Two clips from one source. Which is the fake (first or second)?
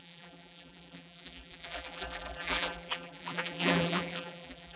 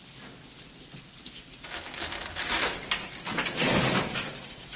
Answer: first